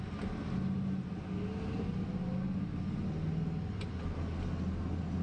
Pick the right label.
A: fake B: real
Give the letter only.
B